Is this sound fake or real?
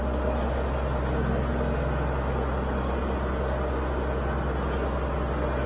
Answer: real